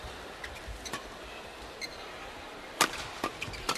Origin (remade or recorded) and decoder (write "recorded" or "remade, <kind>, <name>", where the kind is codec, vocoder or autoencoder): recorded